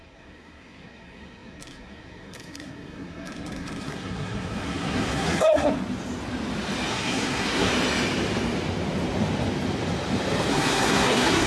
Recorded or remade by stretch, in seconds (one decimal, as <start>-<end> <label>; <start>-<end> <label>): 0.0-5.7 remade; 5.7-6.9 recorded; 6.9-7.7 remade; 7.7-10.5 recorded; 10.5-11.5 remade